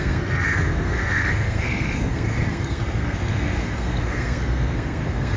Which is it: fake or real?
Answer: fake